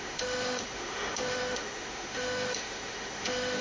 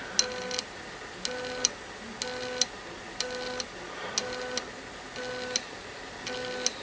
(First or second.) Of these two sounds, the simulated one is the first